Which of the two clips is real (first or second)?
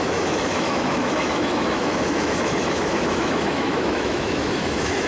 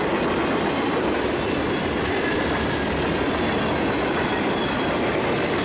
second